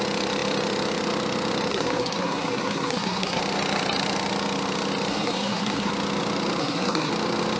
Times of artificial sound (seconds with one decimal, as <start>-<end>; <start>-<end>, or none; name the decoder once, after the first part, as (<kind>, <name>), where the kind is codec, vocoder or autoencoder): 1.7-3.4 (codec, SNAC); 5.1-5.9; 6.6-7.1